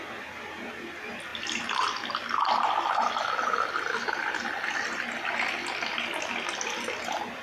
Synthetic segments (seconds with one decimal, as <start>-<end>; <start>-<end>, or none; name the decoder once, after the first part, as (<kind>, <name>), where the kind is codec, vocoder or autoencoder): none